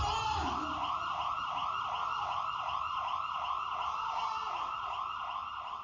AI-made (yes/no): no